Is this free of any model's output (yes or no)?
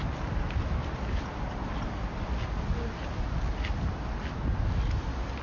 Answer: yes